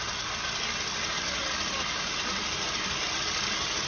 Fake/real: real